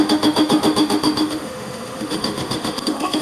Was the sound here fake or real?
fake